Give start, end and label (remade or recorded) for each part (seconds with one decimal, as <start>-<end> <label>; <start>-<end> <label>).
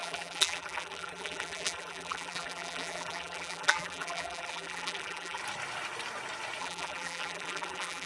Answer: 0.0-5.4 remade; 5.4-6.6 recorded; 6.6-8.1 remade